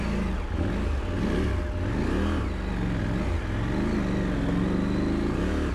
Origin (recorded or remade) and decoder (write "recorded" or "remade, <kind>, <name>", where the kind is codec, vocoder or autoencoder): recorded